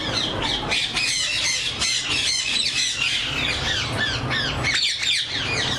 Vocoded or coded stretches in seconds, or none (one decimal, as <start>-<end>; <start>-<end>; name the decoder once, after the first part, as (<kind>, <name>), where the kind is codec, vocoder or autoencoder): 1.8-2.8 (vocoder, Vocos)